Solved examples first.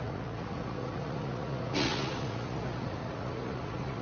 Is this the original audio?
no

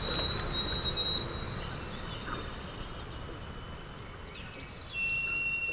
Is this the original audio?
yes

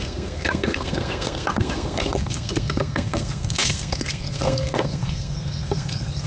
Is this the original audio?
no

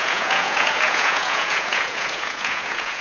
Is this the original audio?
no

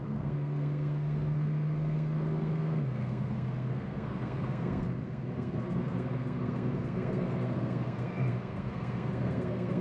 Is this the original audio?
no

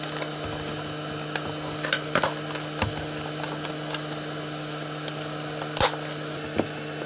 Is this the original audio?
yes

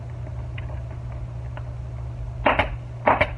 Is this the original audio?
yes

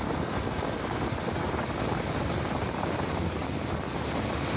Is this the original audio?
yes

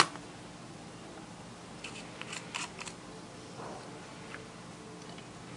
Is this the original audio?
yes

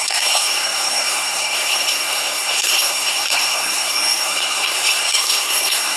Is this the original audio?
no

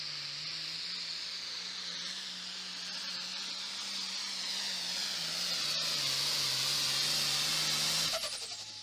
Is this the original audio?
yes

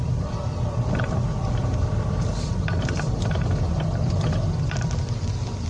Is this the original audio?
yes